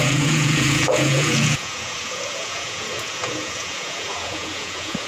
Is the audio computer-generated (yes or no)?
yes